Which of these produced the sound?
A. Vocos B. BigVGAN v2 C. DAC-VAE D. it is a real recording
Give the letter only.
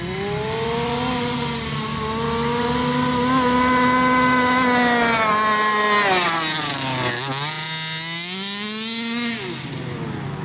D